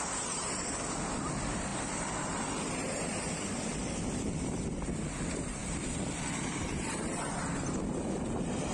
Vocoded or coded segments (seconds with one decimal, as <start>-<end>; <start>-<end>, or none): 0.0-8.7